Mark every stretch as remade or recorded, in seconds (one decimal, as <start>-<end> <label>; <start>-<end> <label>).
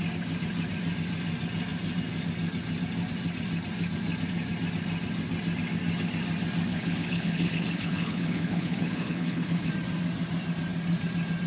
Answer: 0.0-6.7 recorded; 6.7-9.7 remade; 9.7-11.5 recorded